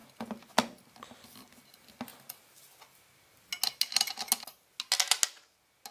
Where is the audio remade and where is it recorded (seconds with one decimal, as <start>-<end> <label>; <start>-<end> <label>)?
0.0-5.9 recorded